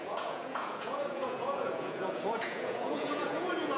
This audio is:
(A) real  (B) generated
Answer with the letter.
B